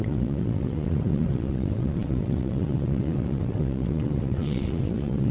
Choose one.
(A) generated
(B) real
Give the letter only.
A